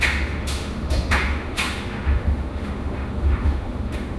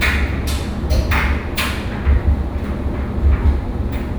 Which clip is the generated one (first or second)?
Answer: first